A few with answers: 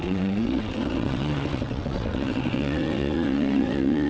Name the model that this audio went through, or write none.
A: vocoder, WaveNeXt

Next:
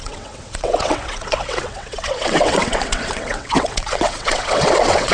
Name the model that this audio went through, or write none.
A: vocoder, WaveNeXt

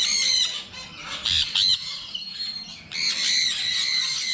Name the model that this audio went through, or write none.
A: none